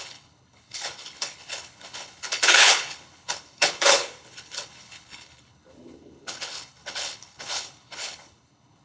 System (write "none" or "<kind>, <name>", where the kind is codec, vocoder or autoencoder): codec, HILCodec